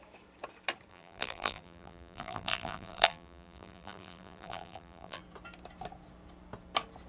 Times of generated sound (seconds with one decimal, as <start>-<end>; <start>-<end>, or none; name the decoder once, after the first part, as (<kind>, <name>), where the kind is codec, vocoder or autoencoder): 0.9-5.2 (vocoder, BigVGAN v2)